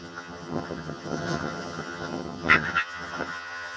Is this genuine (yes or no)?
no